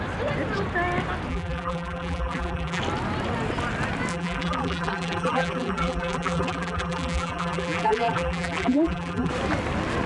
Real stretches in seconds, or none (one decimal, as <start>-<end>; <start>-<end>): 0.0-1.3; 2.8-4.1; 9.3-10.1